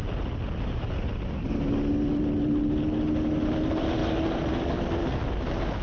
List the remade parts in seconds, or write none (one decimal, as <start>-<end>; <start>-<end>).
none